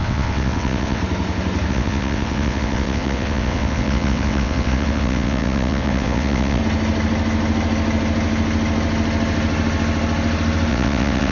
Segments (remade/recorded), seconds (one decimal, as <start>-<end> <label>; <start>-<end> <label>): 0.0-1.0 remade; 1.0-1.7 recorded; 1.7-6.6 remade; 6.6-10.7 recorded; 10.7-11.3 remade